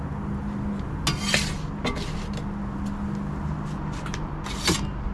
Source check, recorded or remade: recorded